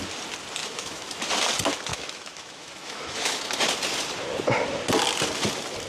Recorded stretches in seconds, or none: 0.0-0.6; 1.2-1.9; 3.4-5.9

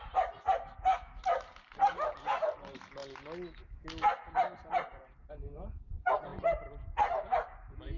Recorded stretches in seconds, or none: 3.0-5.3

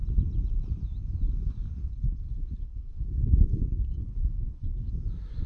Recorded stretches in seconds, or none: 0.0-1.8; 4.9-5.5

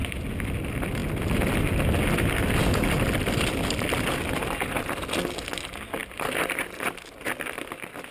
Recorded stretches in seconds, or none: 0.0-8.1

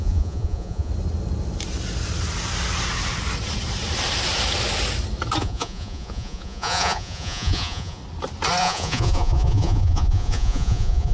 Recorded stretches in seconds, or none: 0.9-5.4; 8.0-8.6

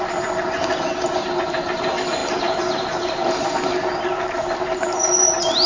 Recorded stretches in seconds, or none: 0.0-5.7

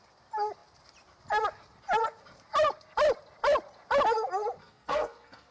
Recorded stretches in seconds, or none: 0.0-4.6